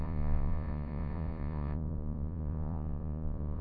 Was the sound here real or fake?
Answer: fake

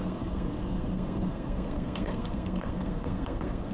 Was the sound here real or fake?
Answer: fake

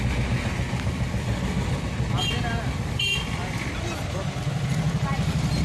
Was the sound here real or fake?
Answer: real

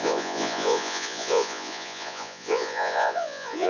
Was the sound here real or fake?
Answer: fake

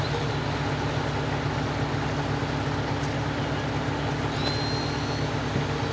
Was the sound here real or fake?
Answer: real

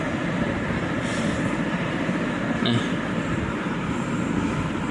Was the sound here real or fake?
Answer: real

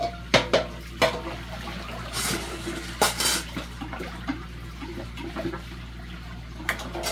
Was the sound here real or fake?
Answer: real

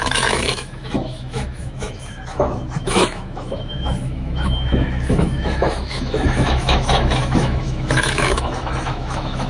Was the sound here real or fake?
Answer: fake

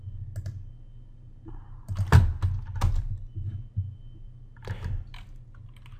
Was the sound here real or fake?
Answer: real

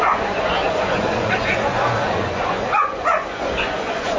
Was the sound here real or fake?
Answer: fake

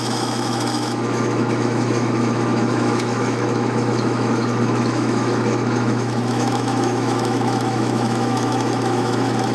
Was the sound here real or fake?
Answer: fake